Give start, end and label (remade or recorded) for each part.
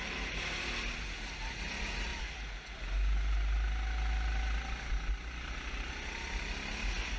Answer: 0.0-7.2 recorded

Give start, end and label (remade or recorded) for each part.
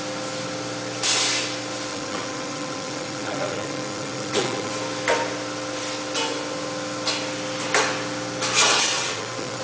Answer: 0.0-1.9 recorded; 1.9-4.7 remade; 4.7-8.7 recorded; 8.7-9.6 remade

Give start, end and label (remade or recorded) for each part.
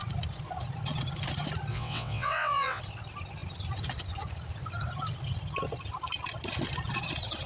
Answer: 0.0-1.7 recorded; 1.7-2.8 remade; 2.8-7.5 recorded